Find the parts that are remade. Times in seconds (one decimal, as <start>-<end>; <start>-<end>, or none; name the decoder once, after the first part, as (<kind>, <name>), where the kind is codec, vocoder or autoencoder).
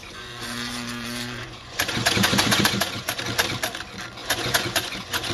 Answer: 0.0-3.2 (vocoder, Vocos); 4.2-5.3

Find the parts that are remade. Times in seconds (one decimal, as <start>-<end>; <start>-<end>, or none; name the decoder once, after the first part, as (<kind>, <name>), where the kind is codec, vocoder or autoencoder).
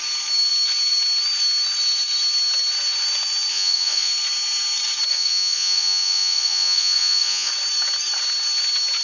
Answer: 3.5-4.1 (vocoder, Vocos); 5.1-7.5